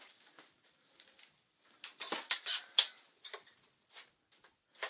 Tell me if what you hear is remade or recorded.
recorded